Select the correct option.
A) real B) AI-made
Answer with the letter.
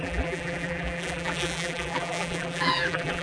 B